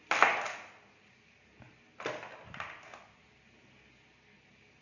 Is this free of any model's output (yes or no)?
yes